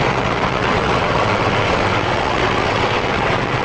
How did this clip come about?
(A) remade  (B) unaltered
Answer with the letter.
A